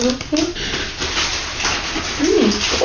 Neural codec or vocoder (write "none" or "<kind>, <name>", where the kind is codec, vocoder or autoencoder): none